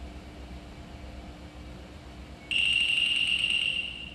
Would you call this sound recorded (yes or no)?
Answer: yes